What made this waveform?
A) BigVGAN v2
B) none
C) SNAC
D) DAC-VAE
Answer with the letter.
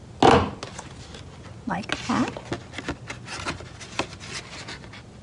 B